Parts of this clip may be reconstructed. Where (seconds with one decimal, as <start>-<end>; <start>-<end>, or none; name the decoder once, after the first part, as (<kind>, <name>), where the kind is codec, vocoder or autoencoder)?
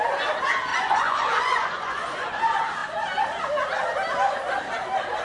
0.7-2.4 (vocoder, Vocos)